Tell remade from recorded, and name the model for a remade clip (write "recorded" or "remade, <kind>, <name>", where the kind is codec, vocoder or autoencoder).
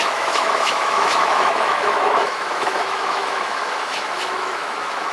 remade, autoencoder, DAC-VAE